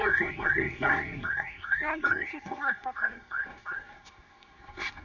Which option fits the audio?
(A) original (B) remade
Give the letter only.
B